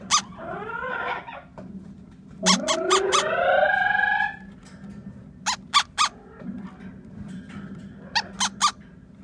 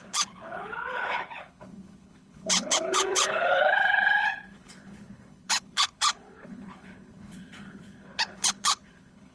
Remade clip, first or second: second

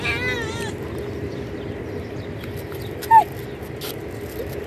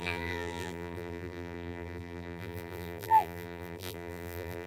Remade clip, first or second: second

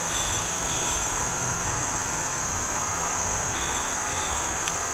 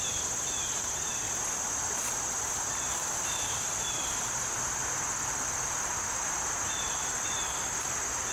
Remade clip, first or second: first